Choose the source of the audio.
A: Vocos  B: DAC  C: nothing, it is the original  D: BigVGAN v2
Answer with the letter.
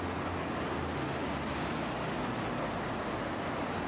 C